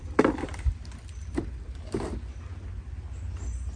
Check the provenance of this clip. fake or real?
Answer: real